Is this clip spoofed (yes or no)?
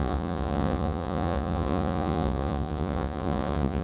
yes